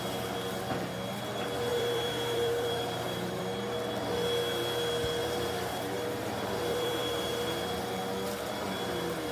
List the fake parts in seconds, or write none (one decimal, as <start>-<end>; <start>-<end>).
1.7-3.4; 5.2-7.7